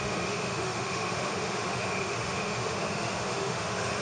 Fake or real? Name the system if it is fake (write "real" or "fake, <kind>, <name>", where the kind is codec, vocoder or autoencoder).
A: fake, autoencoder, DAC-VAE